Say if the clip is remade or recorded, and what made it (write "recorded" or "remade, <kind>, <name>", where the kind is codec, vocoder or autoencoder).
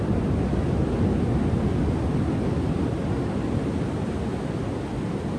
recorded